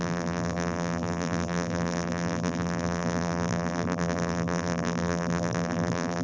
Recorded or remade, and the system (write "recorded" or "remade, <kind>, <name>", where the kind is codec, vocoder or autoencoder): remade, vocoder, BigVGAN v2